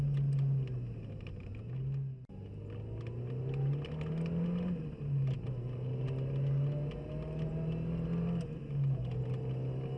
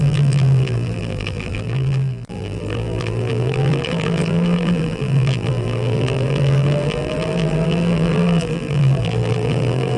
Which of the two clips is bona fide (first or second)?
first